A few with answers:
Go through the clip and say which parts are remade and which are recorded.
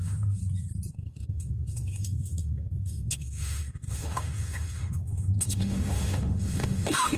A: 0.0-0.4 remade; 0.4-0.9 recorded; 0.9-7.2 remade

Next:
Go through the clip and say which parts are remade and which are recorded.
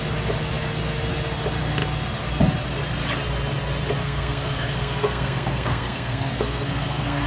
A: 0.0-4.0 recorded; 4.0-7.3 remade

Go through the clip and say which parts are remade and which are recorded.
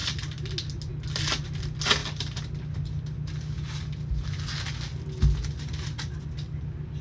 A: 0.0-7.0 recorded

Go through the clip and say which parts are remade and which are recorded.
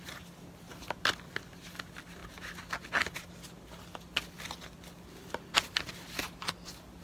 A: 0.0-7.0 recorded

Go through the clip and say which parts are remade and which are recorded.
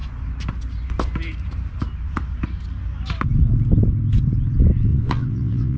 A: 0.0-4.9 recorded; 4.9-5.8 remade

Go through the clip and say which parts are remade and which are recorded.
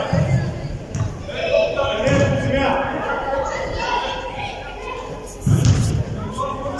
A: 0.0-1.4 recorded; 1.4-2.5 remade; 2.5-3.2 recorded; 3.2-6.8 remade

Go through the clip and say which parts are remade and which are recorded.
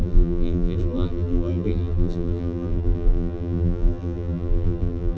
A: 0.0-5.2 remade